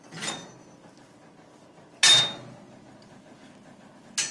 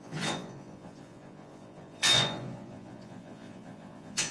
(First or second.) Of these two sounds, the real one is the first